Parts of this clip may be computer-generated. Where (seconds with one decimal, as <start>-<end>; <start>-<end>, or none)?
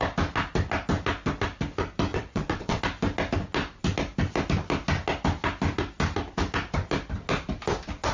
2.1-2.8